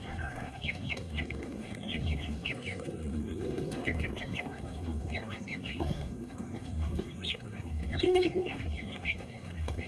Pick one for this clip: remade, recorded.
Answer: remade